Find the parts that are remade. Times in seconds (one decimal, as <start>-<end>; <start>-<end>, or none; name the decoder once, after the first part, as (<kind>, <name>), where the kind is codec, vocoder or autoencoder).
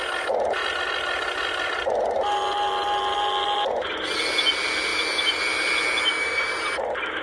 none